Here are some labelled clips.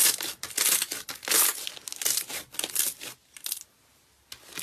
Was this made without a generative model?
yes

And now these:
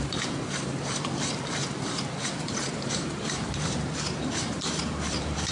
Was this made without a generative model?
no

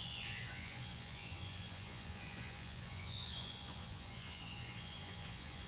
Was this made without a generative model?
no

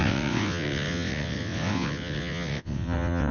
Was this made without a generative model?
no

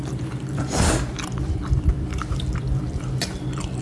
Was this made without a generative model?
no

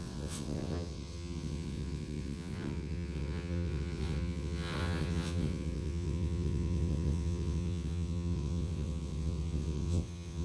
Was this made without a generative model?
no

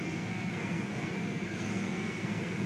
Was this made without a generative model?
no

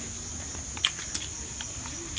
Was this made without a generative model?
yes